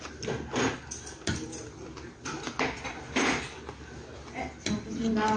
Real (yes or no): yes